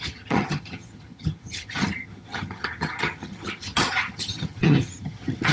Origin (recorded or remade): remade